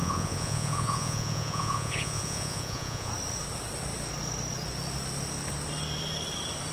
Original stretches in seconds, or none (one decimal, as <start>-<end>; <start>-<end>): 3.1-6.7

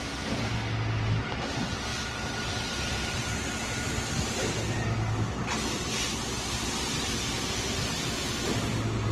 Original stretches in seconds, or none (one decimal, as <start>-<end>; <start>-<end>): 0.0-9.1

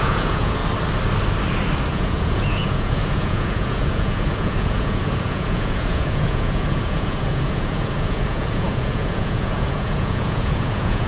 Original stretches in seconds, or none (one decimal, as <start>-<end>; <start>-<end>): 0.6-1.9

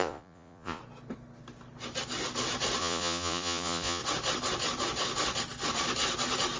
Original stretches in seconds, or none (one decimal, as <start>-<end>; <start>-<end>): 0.8-2.8; 4.0-6.6